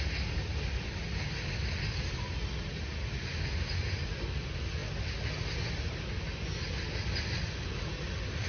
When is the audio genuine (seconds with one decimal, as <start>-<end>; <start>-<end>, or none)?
0.0-8.5